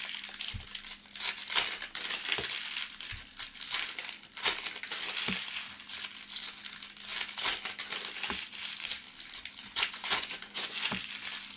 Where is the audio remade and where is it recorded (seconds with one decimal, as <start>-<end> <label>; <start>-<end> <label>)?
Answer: 0.0-9.6 recorded; 9.6-10.9 remade; 10.9-11.6 recorded